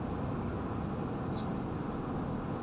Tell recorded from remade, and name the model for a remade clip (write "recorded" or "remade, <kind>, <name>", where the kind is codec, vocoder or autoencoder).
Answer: recorded